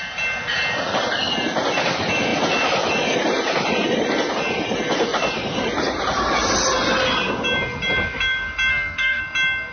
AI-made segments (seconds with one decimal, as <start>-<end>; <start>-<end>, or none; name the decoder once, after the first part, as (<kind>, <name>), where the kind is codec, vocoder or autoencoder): 8.7-9.2 (codec, SNAC)